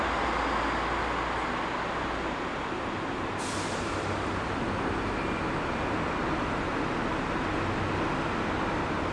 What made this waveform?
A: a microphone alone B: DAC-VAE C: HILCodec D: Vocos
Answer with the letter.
A